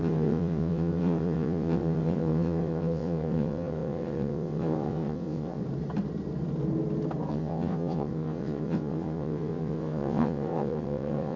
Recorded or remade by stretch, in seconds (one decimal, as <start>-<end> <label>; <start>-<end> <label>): 0.0-5.6 remade; 5.6-7.3 recorded; 7.3-11.4 remade